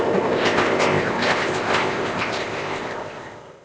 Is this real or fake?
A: fake